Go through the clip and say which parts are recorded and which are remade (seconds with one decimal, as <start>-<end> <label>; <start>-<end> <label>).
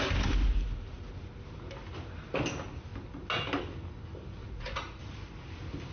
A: 0.0-4.4 recorded; 4.4-5.0 remade; 5.0-5.9 recorded